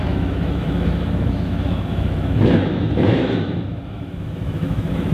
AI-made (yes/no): yes